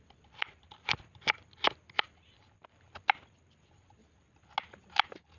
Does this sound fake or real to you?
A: real